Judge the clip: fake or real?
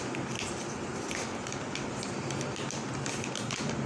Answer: real